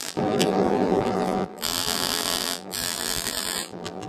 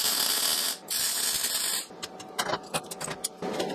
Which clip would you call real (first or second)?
second